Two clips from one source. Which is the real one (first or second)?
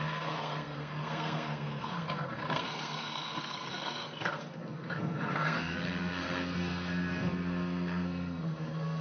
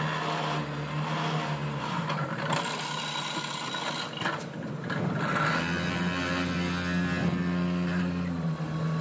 second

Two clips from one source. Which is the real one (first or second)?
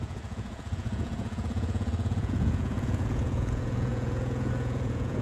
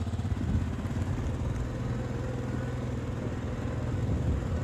second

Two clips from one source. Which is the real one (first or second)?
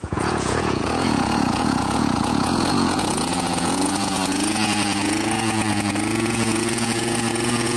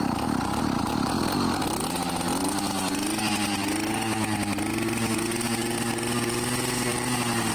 second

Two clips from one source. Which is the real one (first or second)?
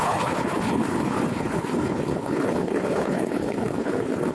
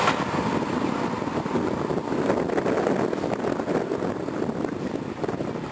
second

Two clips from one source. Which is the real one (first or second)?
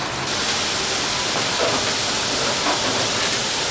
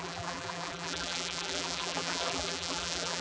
first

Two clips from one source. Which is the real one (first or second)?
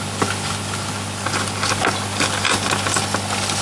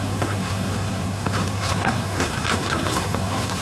first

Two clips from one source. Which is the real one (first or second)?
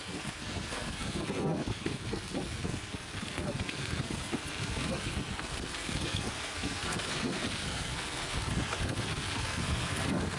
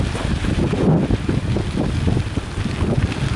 second